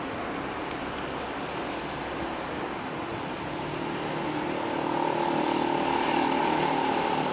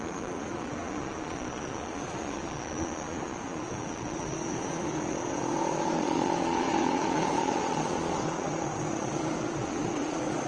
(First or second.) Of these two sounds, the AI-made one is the second